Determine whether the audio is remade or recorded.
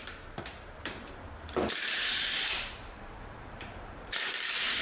remade